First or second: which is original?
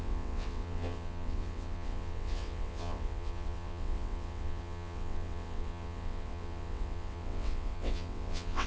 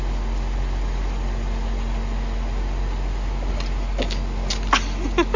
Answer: second